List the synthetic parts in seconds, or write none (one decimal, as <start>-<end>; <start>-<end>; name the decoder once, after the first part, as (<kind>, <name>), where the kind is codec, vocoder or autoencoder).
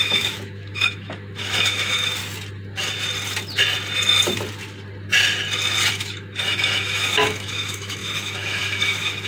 0.0-2.2 (autoencoder, DAC-VAE); 5.9-9.3